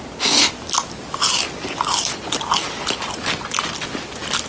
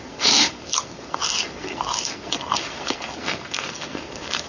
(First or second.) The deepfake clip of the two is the second